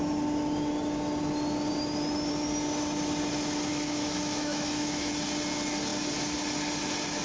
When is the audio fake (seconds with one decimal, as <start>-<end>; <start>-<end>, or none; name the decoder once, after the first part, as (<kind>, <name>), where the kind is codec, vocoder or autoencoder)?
3.7-5.1 (autoencoder, DAC-VAE)